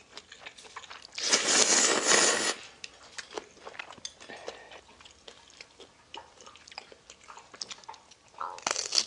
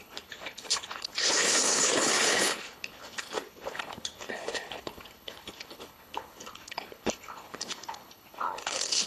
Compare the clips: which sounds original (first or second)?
first